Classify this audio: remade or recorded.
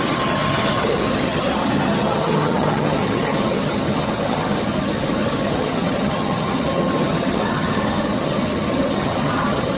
remade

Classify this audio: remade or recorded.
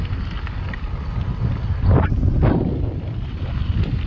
recorded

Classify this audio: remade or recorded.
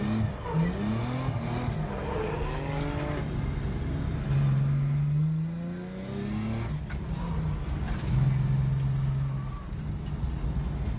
recorded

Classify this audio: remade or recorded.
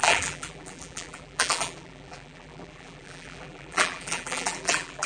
remade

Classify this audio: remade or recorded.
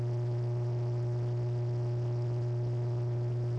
recorded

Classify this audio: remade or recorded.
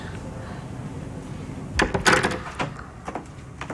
recorded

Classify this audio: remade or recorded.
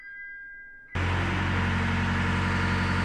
recorded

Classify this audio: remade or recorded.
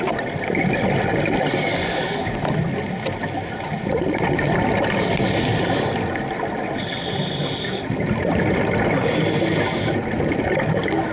recorded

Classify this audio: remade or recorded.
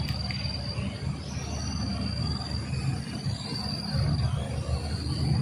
recorded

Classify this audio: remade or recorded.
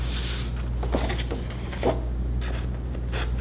recorded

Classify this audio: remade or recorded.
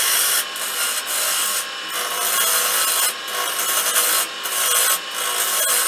recorded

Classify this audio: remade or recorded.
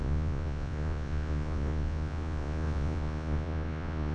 remade